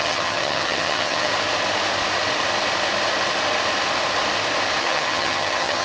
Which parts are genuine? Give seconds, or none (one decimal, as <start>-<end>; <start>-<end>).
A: 1.3-4.8